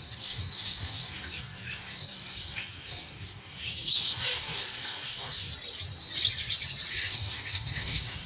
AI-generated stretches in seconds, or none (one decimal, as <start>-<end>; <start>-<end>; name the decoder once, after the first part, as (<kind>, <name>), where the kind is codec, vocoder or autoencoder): 0.0-5.5 (codec, DAC); 6.9-8.3